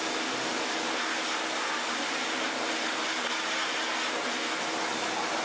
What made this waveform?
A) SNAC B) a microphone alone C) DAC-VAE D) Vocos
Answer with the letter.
B